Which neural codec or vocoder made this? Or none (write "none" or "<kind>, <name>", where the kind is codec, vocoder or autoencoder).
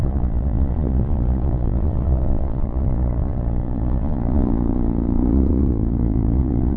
vocoder, Vocos